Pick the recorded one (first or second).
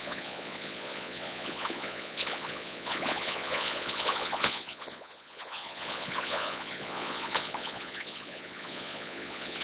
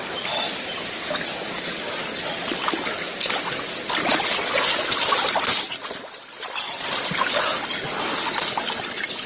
second